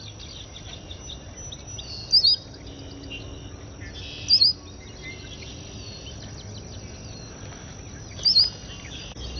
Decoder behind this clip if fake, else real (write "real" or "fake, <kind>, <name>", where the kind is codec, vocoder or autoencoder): real